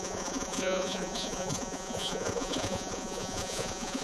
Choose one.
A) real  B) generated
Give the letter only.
B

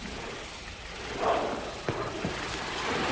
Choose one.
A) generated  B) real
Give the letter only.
A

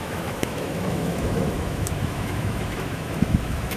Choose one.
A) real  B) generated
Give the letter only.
B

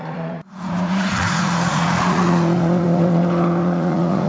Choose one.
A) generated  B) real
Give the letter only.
A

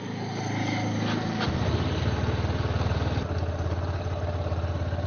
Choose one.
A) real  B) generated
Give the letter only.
A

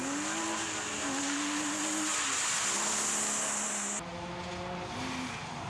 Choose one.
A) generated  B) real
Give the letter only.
B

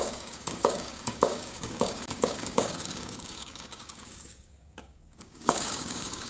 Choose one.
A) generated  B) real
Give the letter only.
A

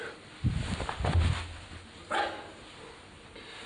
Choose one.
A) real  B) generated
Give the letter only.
A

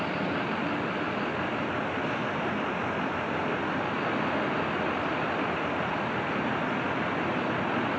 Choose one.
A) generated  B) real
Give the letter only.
B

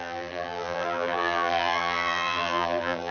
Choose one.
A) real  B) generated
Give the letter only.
B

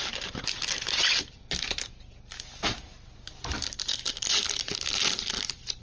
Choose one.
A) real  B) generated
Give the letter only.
A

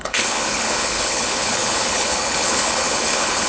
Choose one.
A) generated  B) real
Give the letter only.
A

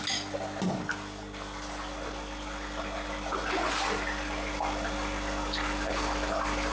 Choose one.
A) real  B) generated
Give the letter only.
A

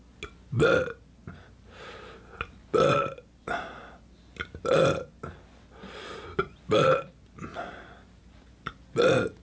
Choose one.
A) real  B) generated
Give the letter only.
A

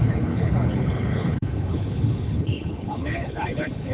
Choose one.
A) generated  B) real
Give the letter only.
A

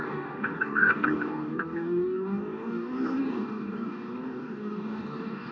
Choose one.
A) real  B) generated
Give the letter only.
B